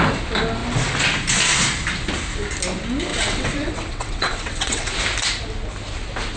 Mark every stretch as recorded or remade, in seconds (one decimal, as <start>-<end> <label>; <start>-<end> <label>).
0.0-3.1 recorded; 3.1-4.9 remade; 4.9-6.4 recorded